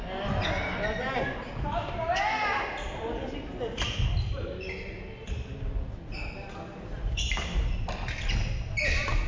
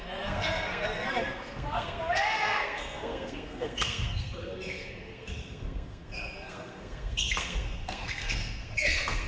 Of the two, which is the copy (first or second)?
second